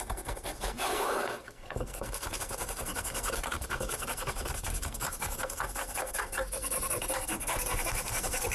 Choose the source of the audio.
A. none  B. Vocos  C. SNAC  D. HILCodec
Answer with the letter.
C